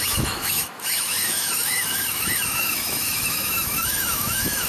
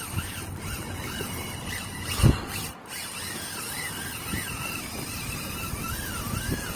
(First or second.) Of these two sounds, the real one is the second